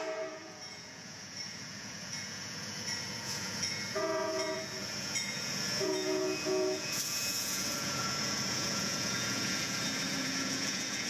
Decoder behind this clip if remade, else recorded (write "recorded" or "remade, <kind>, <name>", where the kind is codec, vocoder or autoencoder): remade, vocoder, Vocos